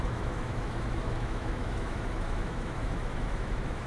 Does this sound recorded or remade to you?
remade